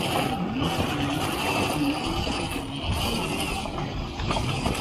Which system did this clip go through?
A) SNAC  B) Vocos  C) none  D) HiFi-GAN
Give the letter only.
C